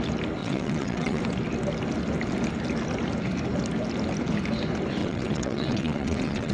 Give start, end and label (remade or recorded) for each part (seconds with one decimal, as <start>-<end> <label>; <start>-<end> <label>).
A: 0.0-0.4 recorded; 0.4-1.2 remade; 1.2-5.0 recorded; 5.0-6.5 remade